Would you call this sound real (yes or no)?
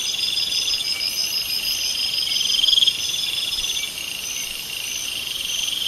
no